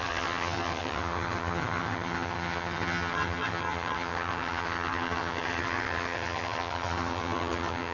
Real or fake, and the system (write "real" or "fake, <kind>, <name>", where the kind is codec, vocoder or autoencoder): fake, vocoder, HiFi-GAN